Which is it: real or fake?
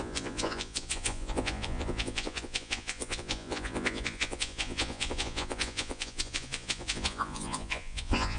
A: fake